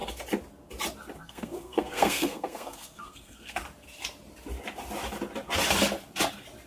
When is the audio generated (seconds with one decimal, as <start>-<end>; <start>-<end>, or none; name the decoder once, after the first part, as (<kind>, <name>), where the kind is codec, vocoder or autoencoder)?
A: 1.2-3.6 (codec, SNAC)